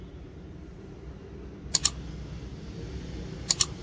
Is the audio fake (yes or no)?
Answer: no